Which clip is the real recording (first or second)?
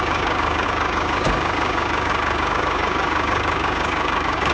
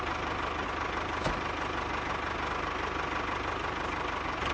second